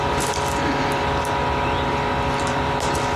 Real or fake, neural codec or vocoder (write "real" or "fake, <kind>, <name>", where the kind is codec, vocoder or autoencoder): real